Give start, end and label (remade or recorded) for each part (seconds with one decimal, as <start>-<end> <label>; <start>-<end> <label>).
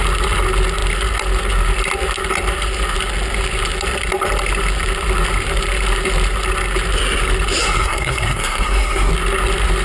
0.0-7.6 recorded; 7.6-9.1 remade; 9.1-9.8 recorded